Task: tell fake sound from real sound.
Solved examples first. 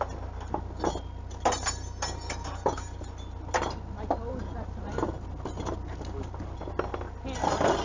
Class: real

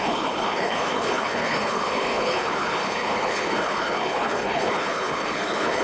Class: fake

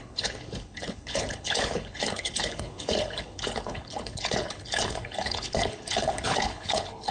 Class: fake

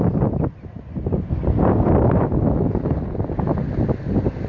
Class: real